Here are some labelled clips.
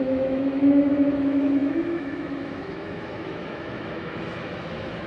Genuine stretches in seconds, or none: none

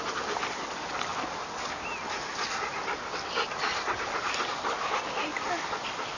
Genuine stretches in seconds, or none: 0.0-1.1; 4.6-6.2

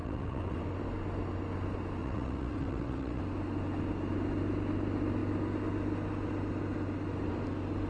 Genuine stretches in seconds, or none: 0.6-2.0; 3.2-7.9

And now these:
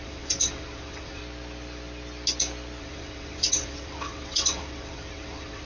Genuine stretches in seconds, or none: 1.2-2.8